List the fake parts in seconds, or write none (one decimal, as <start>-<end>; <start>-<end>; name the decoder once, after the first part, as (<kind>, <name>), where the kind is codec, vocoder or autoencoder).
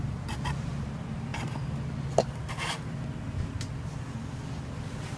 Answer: none